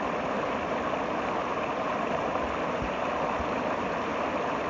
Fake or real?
real